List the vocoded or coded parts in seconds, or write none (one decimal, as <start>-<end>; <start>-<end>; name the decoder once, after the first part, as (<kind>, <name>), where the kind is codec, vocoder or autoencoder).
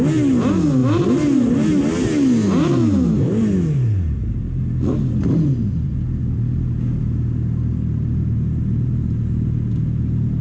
none